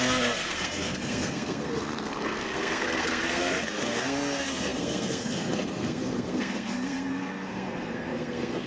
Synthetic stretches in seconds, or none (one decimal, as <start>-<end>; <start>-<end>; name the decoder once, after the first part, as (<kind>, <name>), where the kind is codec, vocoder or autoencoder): 0.0-8.7 (codec, SNAC)